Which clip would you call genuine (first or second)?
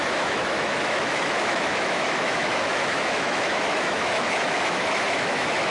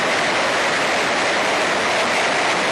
second